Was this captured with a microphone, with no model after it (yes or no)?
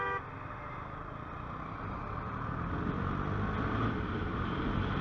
yes